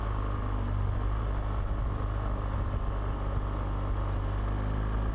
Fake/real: real